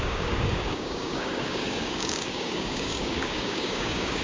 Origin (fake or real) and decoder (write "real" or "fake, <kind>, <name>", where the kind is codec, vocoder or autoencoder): fake, codec, DAC